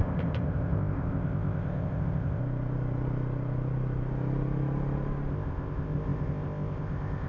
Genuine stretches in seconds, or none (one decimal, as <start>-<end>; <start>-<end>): 2.4-5.3